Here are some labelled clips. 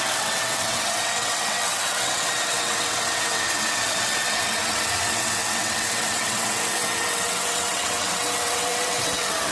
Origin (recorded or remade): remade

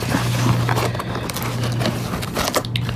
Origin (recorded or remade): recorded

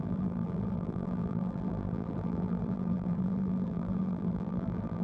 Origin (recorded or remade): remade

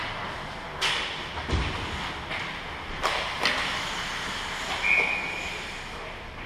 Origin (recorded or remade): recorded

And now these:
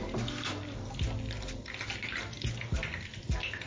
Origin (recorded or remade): recorded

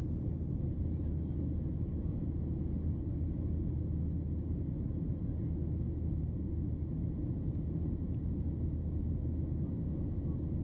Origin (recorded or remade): recorded